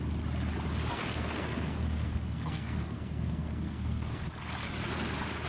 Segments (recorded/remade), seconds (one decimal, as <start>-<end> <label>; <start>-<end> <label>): 0.0-0.9 recorded; 0.9-4.2 remade; 4.2-5.5 recorded